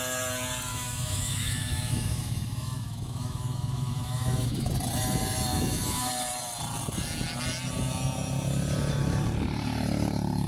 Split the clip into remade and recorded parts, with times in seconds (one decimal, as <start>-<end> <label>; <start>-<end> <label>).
0.0-0.7 recorded; 0.7-4.7 remade; 4.7-5.5 recorded; 5.5-6.1 remade; 6.1-10.5 recorded